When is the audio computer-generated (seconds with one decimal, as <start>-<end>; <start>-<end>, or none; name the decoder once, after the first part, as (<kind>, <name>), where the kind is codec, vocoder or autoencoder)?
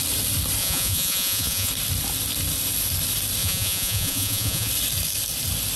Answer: 0.6-1.7 (vocoder, Vocos); 3.4-4.7